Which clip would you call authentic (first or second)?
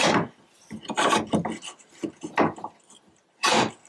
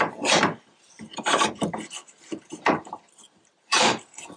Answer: first